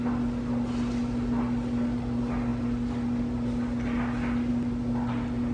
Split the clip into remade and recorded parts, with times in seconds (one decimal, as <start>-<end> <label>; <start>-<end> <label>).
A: 0.0-5.5 recorded

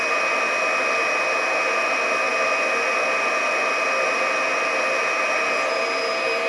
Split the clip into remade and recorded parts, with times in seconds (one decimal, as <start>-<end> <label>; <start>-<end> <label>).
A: 0.0-6.5 recorded

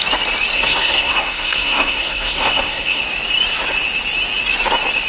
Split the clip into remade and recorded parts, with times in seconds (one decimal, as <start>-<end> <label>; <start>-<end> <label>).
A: 0.0-0.5 recorded; 0.5-3.0 remade; 3.0-5.1 recorded

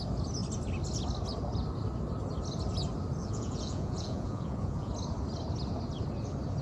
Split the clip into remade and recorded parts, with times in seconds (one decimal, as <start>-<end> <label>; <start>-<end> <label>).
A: 0.0-3.2 recorded; 3.2-4.9 remade; 4.9-6.6 recorded

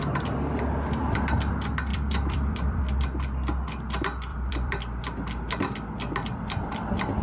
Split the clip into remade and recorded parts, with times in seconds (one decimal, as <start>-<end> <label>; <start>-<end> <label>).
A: 0.0-1.9 recorded; 1.9-2.8 remade; 2.8-4.3 recorded; 4.3-4.8 remade; 4.8-7.2 recorded

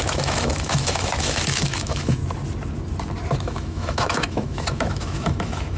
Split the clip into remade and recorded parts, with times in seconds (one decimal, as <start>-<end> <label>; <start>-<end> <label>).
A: 0.0-2.2 remade; 2.2-3.4 recorded; 3.4-5.8 remade

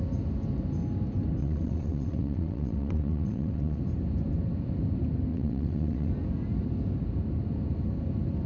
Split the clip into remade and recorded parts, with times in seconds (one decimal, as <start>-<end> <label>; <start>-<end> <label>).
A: 0.0-1.4 recorded; 1.4-3.8 remade; 3.8-5.3 recorded; 5.3-6.1 remade; 6.1-8.5 recorded